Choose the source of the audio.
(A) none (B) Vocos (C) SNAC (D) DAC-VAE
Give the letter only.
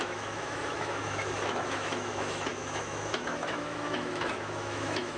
D